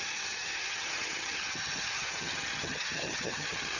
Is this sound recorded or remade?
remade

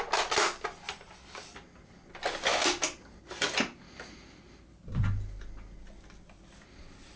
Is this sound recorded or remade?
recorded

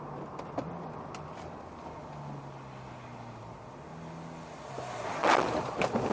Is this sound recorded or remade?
recorded